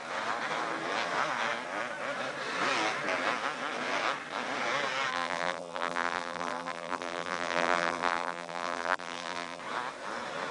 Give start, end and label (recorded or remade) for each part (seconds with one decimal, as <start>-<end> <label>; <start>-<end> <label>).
0.0-5.1 recorded; 5.1-9.6 remade; 9.6-10.5 recorded